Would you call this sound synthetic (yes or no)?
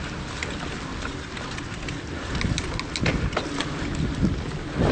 no